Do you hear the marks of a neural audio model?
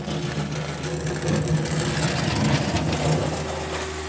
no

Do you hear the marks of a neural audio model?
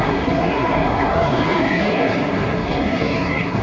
yes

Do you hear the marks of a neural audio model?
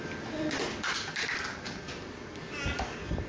no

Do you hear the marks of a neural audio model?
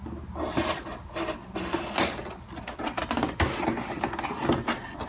no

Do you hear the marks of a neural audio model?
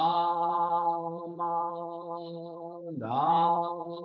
yes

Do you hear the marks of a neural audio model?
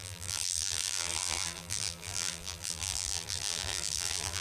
yes